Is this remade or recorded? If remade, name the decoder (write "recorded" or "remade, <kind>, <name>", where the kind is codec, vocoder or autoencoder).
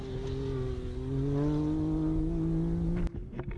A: recorded